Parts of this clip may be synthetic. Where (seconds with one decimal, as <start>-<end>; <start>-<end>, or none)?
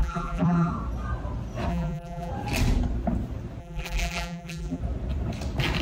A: 0.0-0.7; 1.7-2.3; 3.6-4.8